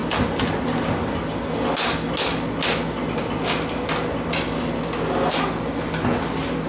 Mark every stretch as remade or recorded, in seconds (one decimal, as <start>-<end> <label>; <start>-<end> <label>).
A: 0.0-6.7 recorded